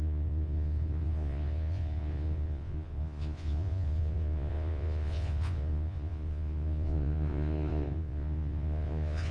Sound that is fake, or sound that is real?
fake